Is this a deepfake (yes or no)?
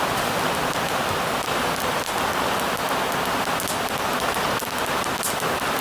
no